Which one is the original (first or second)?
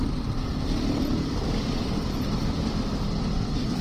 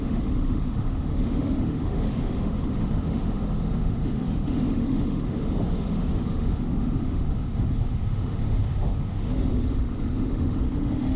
first